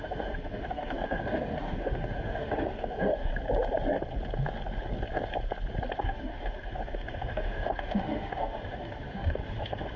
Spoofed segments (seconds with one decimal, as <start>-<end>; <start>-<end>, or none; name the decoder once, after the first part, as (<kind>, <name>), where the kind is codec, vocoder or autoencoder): 0.0-3.3 (autoencoder, DAC-VAE); 6.0-10.0